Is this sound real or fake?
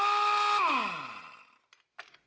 real